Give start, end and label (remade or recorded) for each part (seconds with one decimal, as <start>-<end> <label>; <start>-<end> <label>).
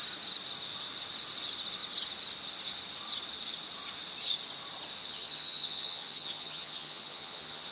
0.0-5.0 recorded; 5.0-7.7 remade